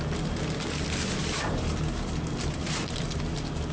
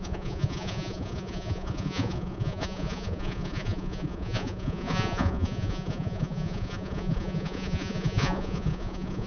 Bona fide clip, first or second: first